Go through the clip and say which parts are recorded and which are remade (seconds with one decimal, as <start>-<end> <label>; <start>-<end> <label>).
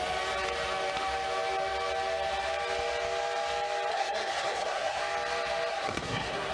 0.0-3.9 recorded; 3.9-5.0 remade; 5.0-5.7 recorded; 5.7-6.5 remade